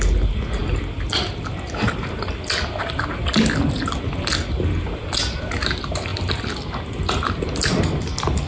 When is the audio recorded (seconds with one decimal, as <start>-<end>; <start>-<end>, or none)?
0.0-8.5